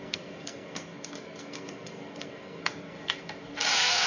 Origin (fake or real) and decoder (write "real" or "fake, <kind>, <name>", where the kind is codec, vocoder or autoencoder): fake, codec, SNAC